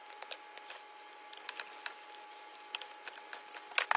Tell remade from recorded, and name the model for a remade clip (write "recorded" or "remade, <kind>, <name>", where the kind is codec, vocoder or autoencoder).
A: recorded